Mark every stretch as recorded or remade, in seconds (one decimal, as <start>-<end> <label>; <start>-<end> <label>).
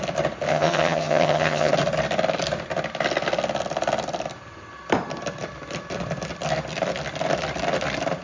0.0-0.5 recorded; 0.5-1.7 remade; 1.7-8.2 recorded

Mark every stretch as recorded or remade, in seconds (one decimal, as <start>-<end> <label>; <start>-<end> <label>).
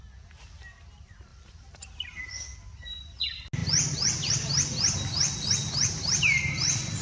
0.0-1.3 recorded; 1.3-2.3 remade; 2.3-7.0 recorded